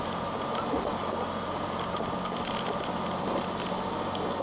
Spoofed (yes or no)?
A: no